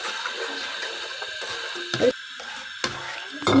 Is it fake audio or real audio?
real